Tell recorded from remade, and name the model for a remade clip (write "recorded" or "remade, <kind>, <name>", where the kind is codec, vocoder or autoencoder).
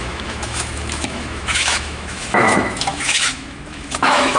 remade, autoencoder, DAC-VAE